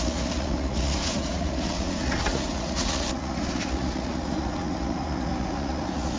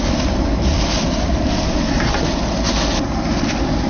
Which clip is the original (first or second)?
second